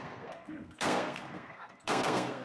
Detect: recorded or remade remade